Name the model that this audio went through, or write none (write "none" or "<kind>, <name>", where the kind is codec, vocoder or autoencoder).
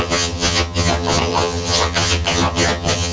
vocoder, HiFi-GAN